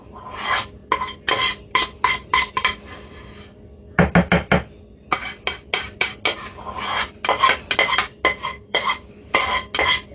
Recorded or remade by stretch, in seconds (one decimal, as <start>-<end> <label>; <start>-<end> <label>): 0.0-8.5 recorded; 8.5-9.3 remade; 9.3-10.1 recorded